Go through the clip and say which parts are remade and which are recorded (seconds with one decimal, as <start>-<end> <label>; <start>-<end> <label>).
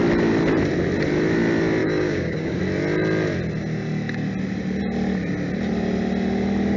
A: 0.0-1.8 recorded; 1.8-2.6 remade; 2.6-6.8 recorded